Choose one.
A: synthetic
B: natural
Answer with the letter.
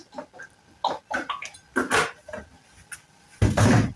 B